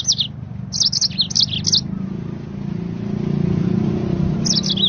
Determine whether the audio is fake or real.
real